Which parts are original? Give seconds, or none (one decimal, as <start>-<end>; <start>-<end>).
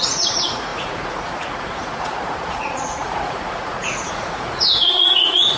none